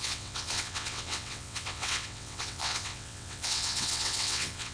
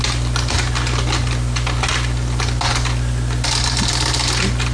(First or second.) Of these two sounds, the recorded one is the second